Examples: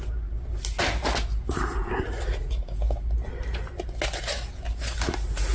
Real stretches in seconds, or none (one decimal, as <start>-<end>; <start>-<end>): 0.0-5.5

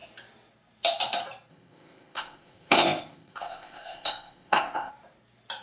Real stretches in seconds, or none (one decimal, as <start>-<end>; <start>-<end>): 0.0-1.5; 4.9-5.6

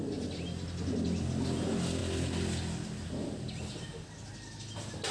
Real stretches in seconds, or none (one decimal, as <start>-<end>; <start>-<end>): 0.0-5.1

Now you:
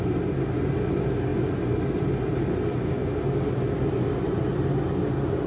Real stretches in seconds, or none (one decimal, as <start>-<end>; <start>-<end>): 0.0-5.5

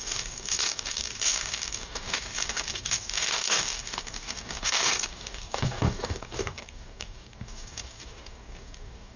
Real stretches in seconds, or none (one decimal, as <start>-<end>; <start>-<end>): none

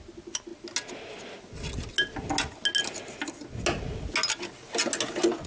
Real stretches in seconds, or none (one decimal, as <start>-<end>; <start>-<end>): 0.0-5.5

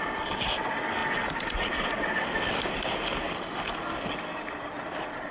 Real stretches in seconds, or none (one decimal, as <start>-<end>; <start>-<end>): 0.0-5.3

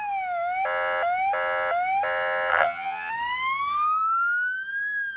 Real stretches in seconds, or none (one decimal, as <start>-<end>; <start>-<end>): 0.0-2.5; 3.1-5.2